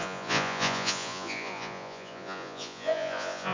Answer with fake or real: fake